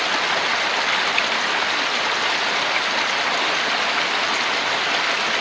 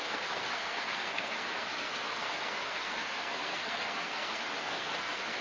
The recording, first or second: first